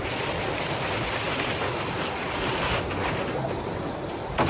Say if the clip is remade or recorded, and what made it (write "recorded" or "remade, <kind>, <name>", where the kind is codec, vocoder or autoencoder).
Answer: recorded